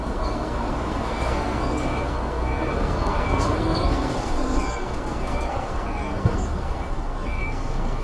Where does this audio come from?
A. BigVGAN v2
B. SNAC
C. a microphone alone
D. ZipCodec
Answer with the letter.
B